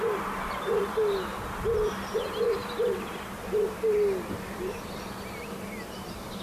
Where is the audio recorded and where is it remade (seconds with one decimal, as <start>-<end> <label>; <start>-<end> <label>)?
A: 0.0-6.4 recorded